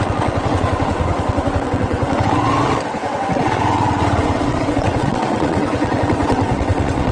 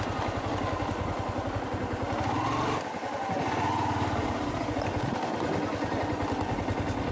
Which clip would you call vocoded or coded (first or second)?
first